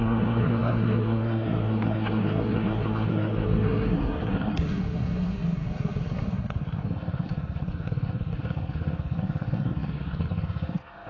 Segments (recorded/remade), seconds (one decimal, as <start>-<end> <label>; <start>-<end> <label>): 0.0-11.1 remade